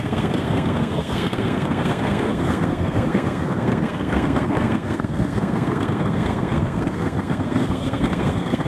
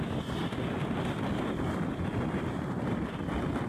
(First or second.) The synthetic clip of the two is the first